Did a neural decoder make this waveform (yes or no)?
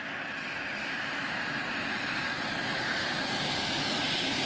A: no